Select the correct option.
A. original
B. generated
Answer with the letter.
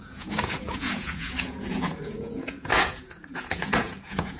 B